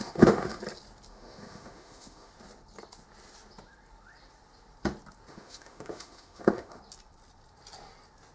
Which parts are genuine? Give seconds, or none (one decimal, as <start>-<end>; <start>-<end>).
0.6-1.1; 2.3-5.3; 6.8-8.3